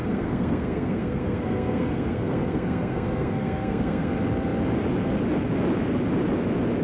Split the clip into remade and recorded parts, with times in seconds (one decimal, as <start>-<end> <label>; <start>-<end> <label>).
0.0-4.1 remade; 4.1-6.8 recorded